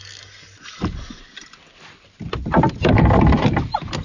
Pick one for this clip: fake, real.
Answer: real